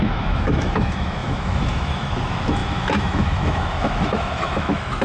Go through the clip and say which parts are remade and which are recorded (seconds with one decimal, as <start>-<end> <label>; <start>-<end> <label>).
0.0-5.0 remade